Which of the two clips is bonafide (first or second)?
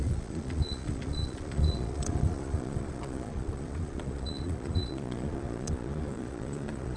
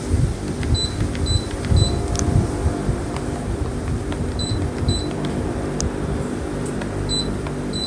second